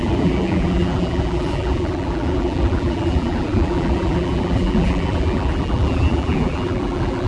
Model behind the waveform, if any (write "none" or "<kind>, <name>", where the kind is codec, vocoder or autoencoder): vocoder, BigVGAN v2